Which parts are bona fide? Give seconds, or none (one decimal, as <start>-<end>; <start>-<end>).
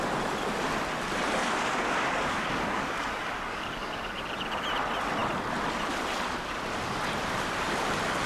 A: 0.0-1.4; 4.2-8.3